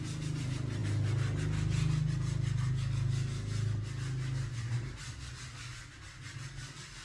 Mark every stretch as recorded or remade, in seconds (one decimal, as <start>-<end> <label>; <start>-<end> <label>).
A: 0.0-7.0 recorded